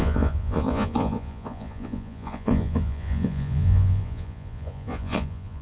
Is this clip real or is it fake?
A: fake